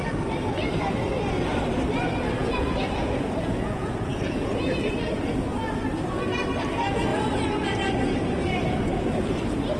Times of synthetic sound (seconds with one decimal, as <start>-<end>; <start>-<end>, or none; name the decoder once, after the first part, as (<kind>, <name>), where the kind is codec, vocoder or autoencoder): 2.4-4.9 (vocoder, Vocos)